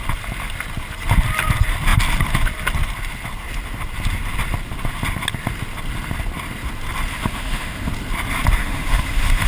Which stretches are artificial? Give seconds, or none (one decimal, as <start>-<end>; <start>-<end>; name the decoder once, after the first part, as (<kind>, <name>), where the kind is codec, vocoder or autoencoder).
7.1-7.9 (autoencoder, DAC-VAE); 8.6-9.5